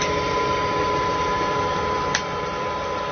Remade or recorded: recorded